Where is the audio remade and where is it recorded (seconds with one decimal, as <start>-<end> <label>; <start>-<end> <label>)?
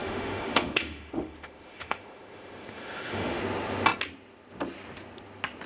0.0-3.4 remade; 3.4-5.7 recorded